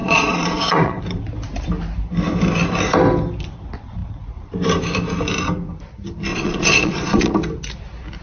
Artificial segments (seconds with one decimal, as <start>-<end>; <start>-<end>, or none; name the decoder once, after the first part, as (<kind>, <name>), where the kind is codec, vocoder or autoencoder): 0.0-1.0 (vocoder, Vocos); 6.3-7.3